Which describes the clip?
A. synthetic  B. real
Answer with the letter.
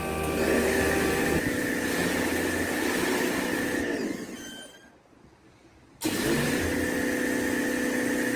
B